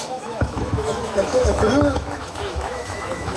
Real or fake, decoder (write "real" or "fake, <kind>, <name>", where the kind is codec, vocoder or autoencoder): fake, autoencoder, DAC-VAE